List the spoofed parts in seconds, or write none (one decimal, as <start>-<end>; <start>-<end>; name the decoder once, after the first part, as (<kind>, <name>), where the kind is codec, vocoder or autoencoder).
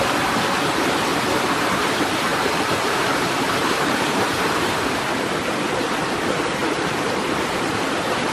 1.1-1.8 (vocoder, BigVGAN v2); 2.3-5.1; 6.6-7.2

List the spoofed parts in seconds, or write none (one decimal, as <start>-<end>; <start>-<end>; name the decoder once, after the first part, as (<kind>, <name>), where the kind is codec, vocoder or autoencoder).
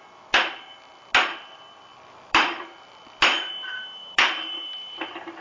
1.9-3.5 (vocoder, BigVGAN v2); 4.0-5.4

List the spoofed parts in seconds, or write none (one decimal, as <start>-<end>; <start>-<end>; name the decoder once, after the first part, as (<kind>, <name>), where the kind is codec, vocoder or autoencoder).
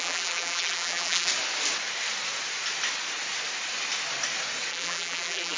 0.0-1.3 (vocoder, BigVGAN v2); 4.7-5.6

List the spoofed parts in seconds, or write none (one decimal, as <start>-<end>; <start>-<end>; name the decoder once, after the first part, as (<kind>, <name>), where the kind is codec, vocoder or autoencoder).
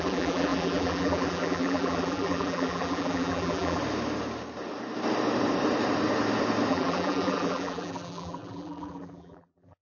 0.0-3.8 (vocoder, BigVGAN v2); 6.7-9.8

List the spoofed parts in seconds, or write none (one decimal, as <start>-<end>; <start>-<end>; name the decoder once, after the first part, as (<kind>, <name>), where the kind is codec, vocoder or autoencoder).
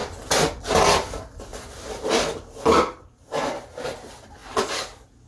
0.0-0.6 (vocoder, BigVGAN v2); 1.5-3.0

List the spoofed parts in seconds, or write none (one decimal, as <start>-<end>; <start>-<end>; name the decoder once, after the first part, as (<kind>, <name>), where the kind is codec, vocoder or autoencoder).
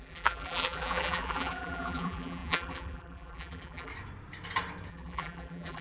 0.0-3.9 (vocoder, BigVGAN v2); 4.9-5.8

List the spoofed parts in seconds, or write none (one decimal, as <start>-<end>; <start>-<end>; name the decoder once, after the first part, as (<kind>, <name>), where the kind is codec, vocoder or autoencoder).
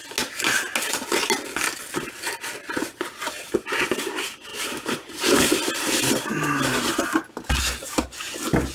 4.5-6.2 (vocoder, BigVGAN v2)